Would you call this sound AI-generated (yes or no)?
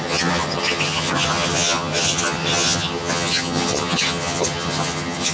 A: yes